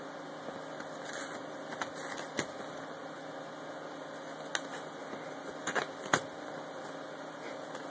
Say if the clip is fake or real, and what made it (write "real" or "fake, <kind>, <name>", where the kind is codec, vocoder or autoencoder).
real